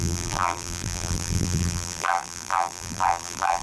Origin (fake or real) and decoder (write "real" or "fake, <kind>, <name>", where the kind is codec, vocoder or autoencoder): fake, vocoder, BigVGAN v2